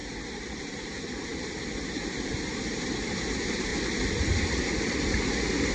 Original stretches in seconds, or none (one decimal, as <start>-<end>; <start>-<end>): 0.0-0.6; 1.3-1.9; 3.7-5.7